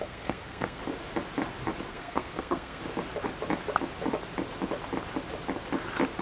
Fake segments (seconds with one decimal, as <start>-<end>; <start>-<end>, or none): 0.0-0.8; 1.9-2.8